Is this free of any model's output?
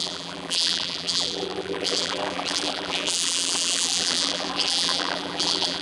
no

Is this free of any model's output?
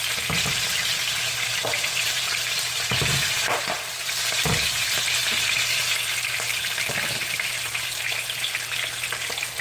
no